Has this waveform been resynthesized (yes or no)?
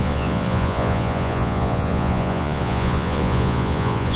yes